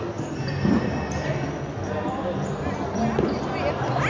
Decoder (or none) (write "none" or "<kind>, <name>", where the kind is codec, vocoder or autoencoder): none